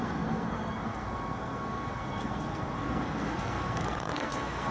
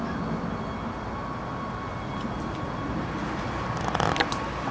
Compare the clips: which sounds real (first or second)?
second